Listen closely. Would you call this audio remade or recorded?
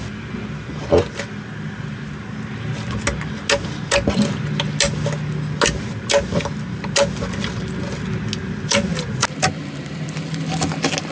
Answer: recorded